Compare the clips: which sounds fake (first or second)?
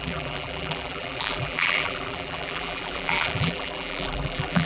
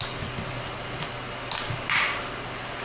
first